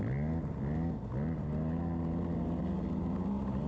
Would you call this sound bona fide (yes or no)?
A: yes